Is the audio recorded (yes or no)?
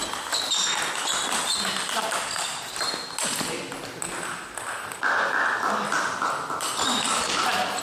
yes